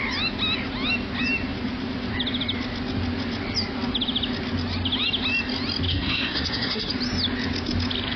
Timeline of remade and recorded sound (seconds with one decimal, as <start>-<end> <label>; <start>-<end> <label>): 0.0-5.9 recorded; 5.9-6.9 remade; 6.9-8.2 recorded